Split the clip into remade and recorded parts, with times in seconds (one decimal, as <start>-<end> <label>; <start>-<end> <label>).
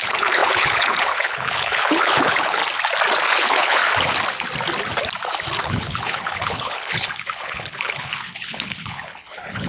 0.0-2.6 remade; 2.6-3.2 recorded; 3.2-3.8 remade; 3.8-5.6 recorded; 5.6-9.7 remade